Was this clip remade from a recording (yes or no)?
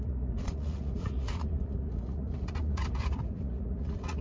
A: yes